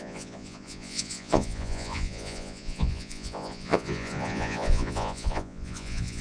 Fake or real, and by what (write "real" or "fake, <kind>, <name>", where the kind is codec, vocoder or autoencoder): fake, vocoder, Vocos